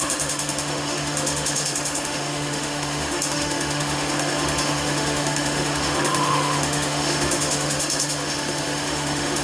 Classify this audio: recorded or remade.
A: remade